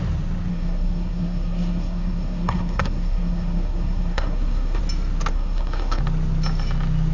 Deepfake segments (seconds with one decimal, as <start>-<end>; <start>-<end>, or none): 0.5-4.8; 5.3-6.0